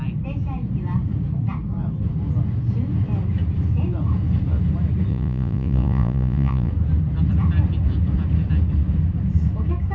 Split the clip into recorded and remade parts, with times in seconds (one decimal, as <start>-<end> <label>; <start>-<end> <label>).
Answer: 0.0-5.1 recorded; 5.1-6.7 remade; 6.7-9.9 recorded